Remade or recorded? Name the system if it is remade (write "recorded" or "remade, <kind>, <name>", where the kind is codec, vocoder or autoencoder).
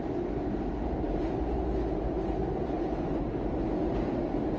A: recorded